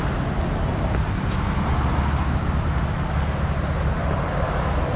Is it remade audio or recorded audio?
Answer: recorded